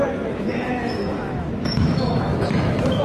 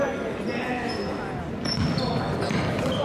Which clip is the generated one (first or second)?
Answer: first